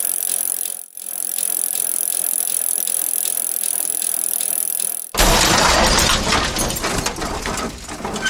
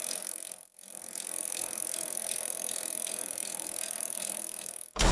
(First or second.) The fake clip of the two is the second